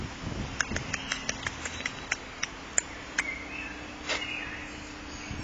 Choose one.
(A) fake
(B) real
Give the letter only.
B